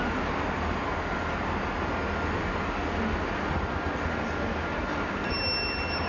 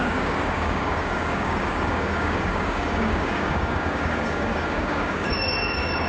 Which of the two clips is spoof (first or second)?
second